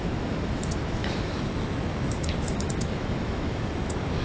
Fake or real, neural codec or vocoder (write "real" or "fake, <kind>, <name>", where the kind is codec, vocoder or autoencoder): fake, autoencoder, DAC-VAE